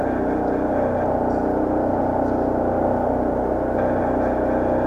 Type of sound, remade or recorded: recorded